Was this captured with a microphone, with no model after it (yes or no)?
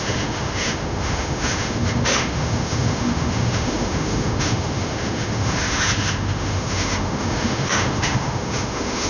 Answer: no